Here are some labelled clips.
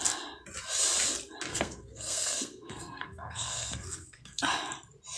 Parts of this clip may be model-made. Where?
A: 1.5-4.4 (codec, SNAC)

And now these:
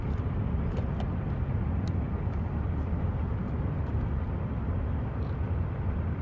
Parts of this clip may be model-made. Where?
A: none

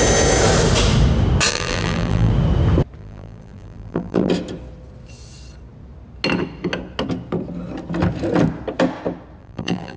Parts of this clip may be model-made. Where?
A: 1.5-2.3 (vocoder, BigVGAN v2); 3.0-4.3; 9.4-10.0